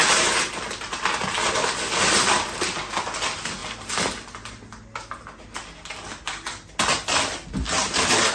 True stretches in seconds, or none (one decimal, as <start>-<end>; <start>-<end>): 0.0-8.3